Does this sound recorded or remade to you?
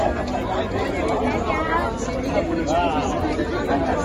recorded